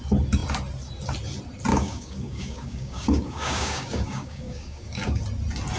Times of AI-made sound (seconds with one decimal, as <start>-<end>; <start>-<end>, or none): 1.7-5.2